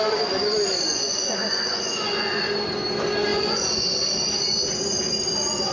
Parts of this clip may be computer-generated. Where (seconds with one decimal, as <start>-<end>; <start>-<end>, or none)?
0.9-2.4; 3.3-4.0